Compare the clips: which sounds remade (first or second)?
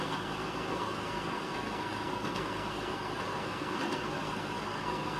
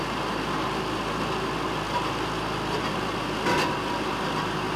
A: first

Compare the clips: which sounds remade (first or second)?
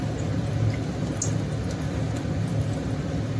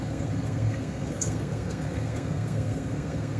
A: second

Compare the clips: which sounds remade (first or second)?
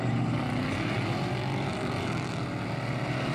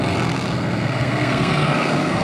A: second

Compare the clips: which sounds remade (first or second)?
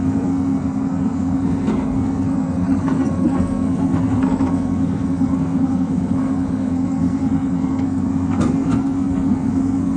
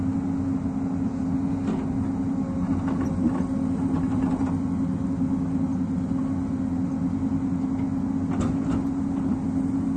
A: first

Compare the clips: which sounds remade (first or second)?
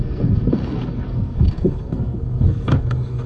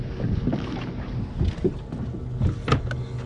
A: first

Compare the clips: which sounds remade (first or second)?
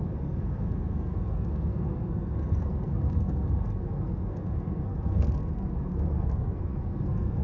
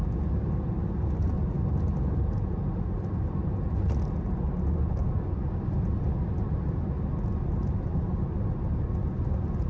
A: first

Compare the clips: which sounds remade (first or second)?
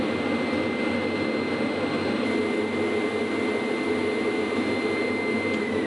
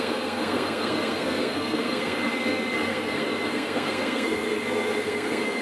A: second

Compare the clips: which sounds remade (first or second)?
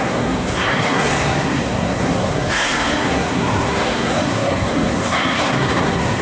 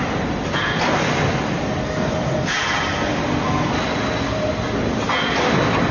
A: first